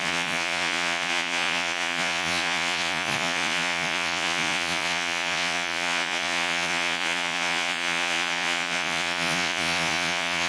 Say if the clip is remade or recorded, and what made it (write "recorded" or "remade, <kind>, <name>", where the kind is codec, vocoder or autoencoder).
remade, vocoder, Vocos